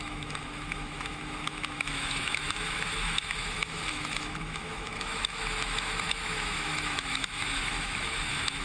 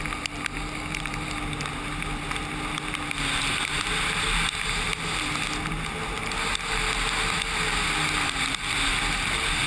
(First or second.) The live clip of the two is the second